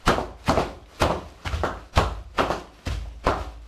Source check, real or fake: real